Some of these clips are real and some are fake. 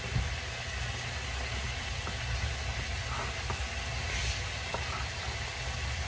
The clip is real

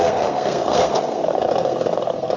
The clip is fake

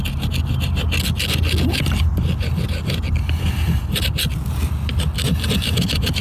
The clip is real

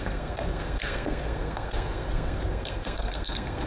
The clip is fake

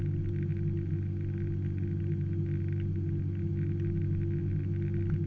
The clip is real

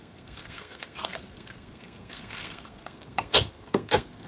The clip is fake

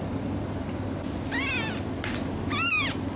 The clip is real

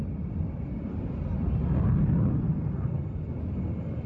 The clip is real